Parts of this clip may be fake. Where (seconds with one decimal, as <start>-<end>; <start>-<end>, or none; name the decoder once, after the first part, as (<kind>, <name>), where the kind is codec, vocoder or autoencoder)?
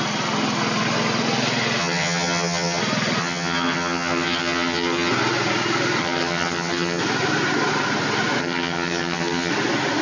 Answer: 1.8-2.8 (vocoder, HiFi-GAN); 3.2-5.1; 6.0-7.0; 8.4-9.5